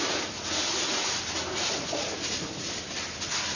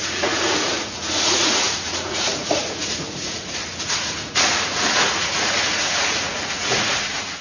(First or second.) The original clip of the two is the first